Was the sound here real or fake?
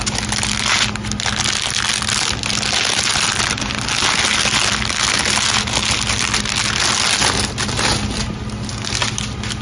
real